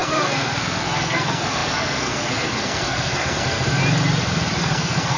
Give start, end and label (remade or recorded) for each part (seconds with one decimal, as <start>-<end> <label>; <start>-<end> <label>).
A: 0.0-3.8 remade; 3.8-4.6 recorded; 4.6-5.2 remade